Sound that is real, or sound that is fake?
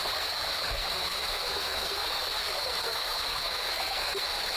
fake